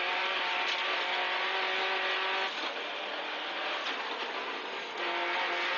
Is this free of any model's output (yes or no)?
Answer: yes